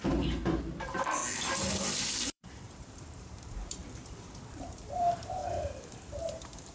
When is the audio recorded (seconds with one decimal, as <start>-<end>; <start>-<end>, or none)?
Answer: 1.2-2.1; 3.8-4.5

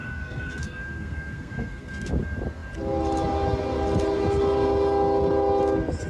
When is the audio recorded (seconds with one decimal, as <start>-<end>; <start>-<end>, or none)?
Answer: 2.1-6.1

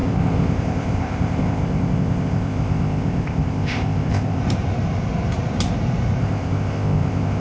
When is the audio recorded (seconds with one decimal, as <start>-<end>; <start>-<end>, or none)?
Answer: 4.4-6.2

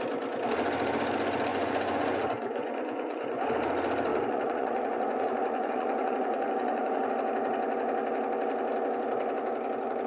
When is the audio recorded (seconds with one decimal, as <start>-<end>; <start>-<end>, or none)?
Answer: 0.0-1.5; 3.5-4.1; 7.1-10.1

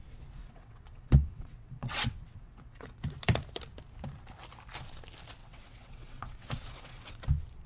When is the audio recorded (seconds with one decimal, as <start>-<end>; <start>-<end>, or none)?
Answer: 0.0-0.4; 3.0-5.4; 7.2-7.7

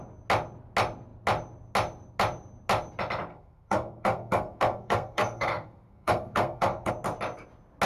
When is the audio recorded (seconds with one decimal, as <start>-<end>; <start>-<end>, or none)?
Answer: 0.0-3.3; 6.9-7.9

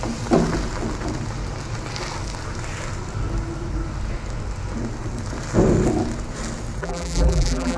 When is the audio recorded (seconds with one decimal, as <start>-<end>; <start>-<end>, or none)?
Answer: 0.0-6.8